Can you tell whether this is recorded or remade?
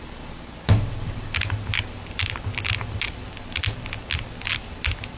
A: recorded